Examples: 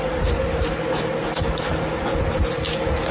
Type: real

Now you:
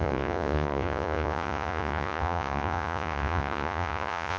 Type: fake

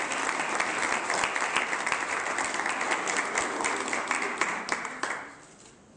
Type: real